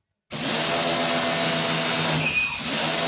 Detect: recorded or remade recorded